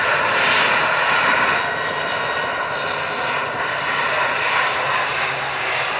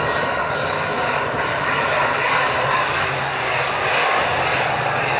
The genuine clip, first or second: first